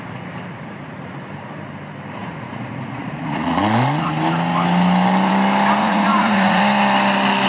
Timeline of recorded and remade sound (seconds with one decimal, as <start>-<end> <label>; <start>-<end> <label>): 0.0-0.5 recorded; 0.5-1.2 remade; 1.2-2.2 recorded; 2.2-4.1 remade; 4.1-5.8 recorded; 5.8-6.6 remade; 6.6-7.5 recorded